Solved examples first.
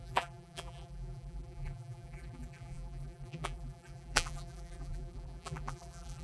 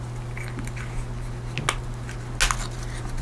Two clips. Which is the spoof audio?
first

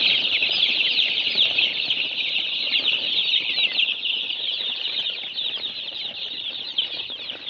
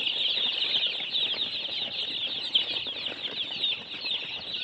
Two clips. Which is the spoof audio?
first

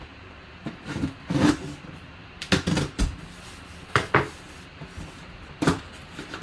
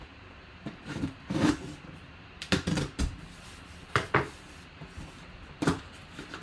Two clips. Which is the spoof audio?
second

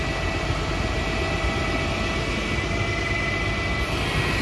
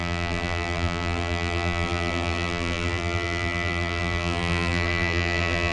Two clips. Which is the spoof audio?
second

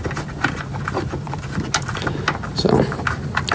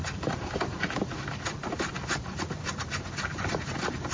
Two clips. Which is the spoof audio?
second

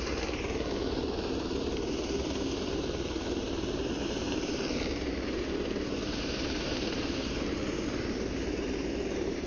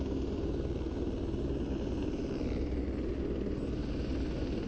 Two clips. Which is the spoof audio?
first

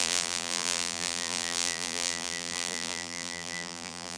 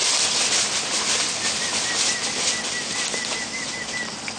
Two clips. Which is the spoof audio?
first